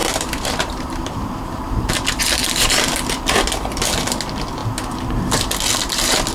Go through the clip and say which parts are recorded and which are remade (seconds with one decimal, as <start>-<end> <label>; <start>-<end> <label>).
0.0-1.9 remade; 1.9-2.4 recorded; 2.4-3.4 remade; 3.4-6.3 recorded